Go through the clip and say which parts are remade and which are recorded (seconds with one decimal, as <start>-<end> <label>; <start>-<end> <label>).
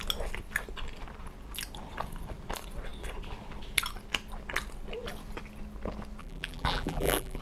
0.0-6.2 recorded; 6.2-7.4 remade